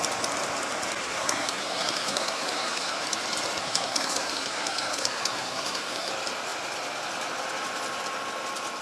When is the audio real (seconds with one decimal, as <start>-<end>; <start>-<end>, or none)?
0.0-1.0; 3.0-3.6; 6.1-8.8